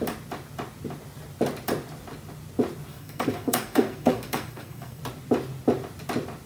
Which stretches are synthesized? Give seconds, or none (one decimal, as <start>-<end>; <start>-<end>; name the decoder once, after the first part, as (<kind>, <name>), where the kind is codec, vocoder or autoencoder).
2.9-5.0 (codec, SNAC)